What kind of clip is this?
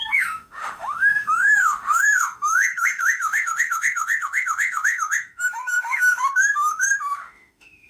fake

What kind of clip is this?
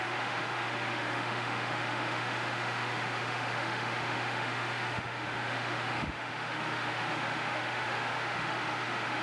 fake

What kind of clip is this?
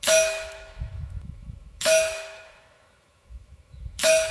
fake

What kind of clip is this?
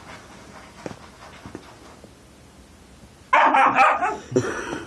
real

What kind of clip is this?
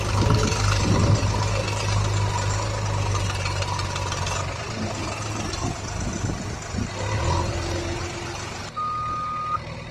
real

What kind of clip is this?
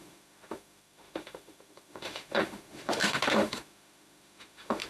fake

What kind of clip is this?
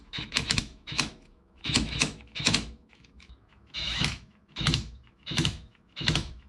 fake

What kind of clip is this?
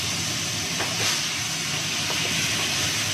real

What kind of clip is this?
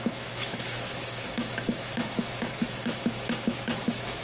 fake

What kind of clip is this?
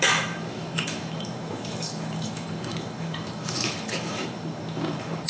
fake